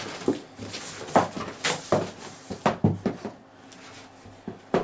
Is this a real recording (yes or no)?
yes